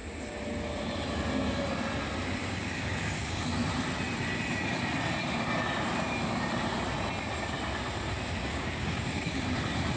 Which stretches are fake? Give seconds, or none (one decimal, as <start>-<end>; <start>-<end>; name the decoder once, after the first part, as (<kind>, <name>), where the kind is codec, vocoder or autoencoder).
2.4-3.4 (codec, DAC); 8.5-9.6